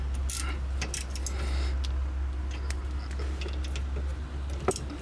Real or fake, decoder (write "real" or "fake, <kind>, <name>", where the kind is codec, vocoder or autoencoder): real